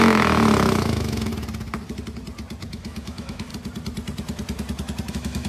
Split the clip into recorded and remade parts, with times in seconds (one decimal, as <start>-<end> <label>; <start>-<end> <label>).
0.0-1.3 remade; 1.3-2.7 recorded; 2.7-3.5 remade; 3.5-5.1 recorded; 5.1-5.5 remade